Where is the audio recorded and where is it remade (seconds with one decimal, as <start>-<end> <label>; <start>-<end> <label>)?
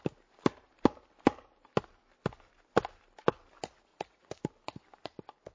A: 0.0-3.9 recorded; 3.9-4.4 remade; 4.4-5.5 recorded